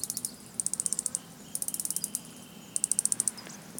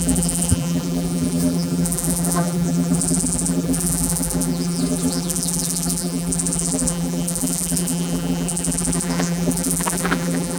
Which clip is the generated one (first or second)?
second